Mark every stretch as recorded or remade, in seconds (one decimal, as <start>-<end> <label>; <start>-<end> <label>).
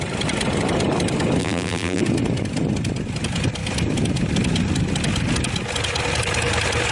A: 0.0-1.4 recorded; 1.4-2.0 remade; 2.0-6.9 recorded